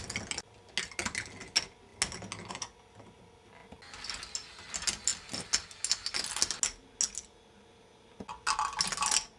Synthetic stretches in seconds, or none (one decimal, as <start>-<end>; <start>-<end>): none